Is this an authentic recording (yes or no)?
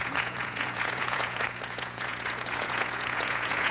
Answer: no